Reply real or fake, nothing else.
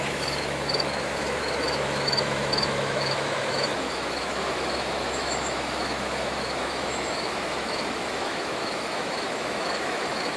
fake